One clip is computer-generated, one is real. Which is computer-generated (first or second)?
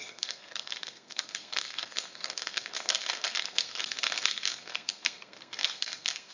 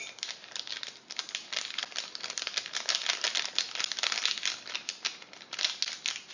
first